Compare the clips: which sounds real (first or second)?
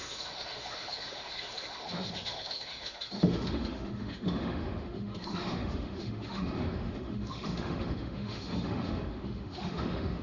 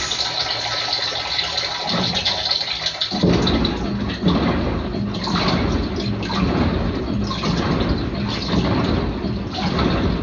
second